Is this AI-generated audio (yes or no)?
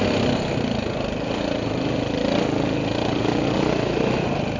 no